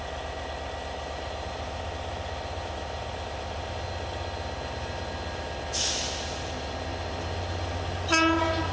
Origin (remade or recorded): recorded